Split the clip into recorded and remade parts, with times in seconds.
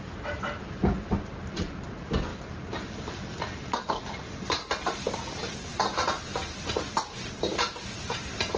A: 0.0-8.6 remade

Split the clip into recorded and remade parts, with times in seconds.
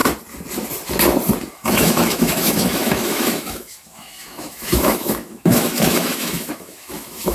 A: 0.0-1.5 recorded; 1.5-7.3 remade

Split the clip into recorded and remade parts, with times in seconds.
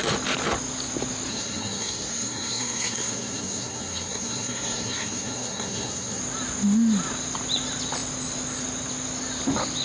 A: 0.0-1.3 recorded; 1.3-6.2 remade; 6.2-9.8 recorded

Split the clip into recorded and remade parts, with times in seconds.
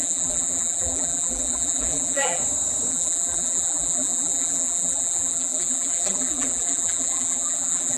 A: 0.0-2.4 remade; 2.4-2.9 recorded; 2.9-8.0 remade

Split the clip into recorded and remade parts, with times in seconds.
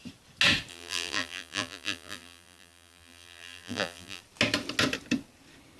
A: 0.0-0.7 recorded; 0.7-4.2 remade; 4.2-5.8 recorded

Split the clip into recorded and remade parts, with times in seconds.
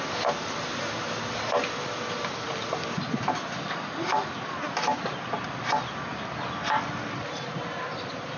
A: 0.0-8.4 recorded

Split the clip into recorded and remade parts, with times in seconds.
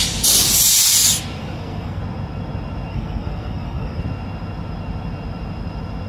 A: 0.0-1.4 recorded; 1.4-2.0 remade; 2.0-2.9 recorded; 2.9-4.0 remade; 4.0-6.1 recorded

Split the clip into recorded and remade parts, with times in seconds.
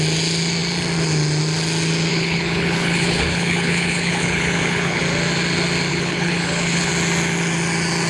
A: 0.0-2.1 recorded; 2.1-5.0 remade; 5.0-5.9 recorded; 5.9-6.9 remade; 6.9-8.1 recorded